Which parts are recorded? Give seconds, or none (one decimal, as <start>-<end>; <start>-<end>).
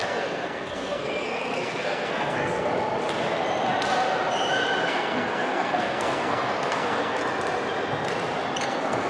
2.7-4.8; 7.2-8.6